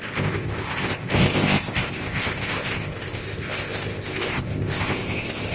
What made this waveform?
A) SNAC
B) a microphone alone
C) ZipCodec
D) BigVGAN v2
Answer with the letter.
C